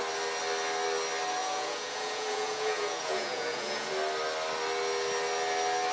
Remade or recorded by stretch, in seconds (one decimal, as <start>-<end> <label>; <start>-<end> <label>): 0.0-1.4 recorded; 1.4-3.9 remade; 3.9-5.9 recorded